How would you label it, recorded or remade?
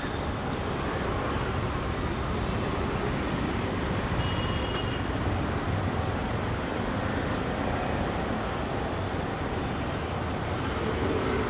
recorded